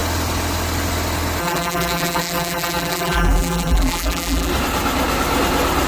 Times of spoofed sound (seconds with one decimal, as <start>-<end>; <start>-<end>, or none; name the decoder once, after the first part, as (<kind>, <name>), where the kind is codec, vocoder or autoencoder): 1.4-4.5 (vocoder, BigVGAN v2)